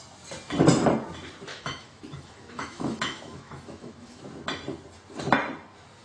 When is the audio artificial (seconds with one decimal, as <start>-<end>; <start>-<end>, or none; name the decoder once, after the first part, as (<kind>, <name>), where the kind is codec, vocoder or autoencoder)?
1.5-4.2 (autoencoder, DAC-VAE)

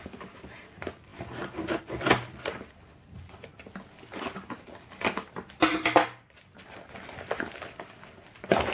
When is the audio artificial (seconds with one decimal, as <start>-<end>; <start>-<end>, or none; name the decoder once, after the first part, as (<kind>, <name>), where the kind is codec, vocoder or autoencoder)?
none

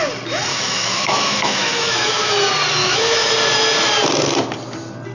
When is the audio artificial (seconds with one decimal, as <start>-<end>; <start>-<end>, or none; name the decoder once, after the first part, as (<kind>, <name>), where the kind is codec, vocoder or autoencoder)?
0.5-2.3 (autoencoder, DAC-VAE); 2.8-3.3

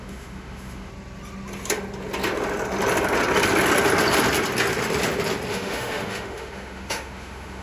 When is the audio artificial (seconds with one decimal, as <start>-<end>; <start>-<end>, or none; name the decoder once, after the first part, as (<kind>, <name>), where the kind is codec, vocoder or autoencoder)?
0.0-0.9 (autoencoder, DAC-VAE); 5.5-7.6